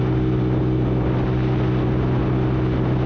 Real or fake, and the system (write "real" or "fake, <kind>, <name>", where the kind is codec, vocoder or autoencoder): real